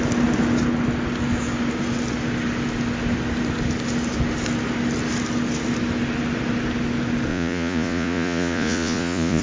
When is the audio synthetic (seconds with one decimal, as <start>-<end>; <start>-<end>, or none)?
7.3-9.4